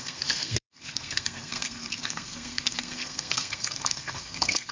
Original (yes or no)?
no